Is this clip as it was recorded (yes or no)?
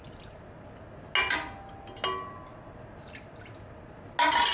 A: yes